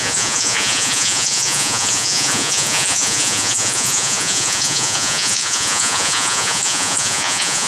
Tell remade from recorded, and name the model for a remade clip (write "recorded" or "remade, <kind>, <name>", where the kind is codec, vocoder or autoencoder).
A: remade, vocoder, Vocos